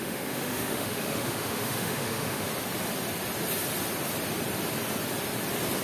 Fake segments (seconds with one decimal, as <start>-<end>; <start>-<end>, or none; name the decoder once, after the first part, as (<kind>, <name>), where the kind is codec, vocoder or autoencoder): 0.0-2.5 (autoencoder, DAC-VAE)